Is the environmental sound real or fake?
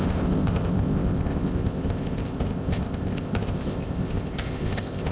fake